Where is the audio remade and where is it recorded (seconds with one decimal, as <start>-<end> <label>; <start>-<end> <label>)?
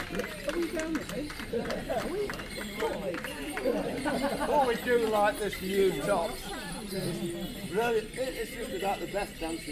0.0-1.8 recorded; 1.8-4.3 remade; 4.3-9.7 recorded